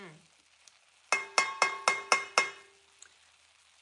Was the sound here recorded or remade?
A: recorded